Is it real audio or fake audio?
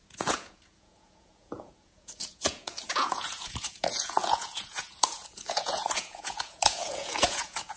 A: fake